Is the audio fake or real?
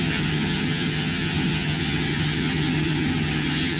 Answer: fake